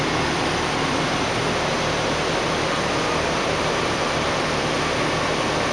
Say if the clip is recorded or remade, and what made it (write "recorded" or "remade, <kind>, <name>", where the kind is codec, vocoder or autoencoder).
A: remade, vocoder, BigVGAN v2